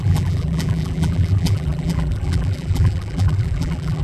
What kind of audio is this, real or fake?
fake